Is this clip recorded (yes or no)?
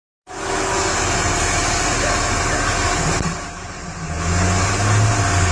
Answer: yes